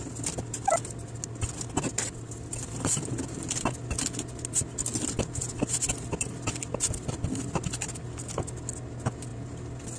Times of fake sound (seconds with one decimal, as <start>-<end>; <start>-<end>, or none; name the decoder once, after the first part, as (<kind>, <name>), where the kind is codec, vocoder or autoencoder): none